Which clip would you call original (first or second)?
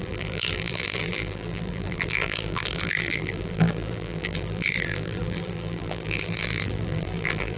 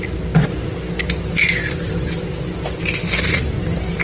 second